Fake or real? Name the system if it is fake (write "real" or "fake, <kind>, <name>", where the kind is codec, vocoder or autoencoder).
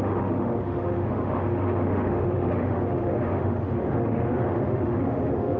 fake, autoencoder, DAC-VAE